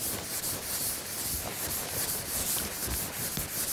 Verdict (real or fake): real